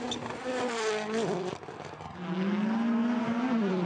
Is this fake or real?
real